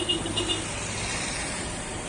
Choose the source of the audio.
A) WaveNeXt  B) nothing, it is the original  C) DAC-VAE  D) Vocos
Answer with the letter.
B